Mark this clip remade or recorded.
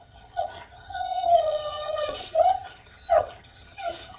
remade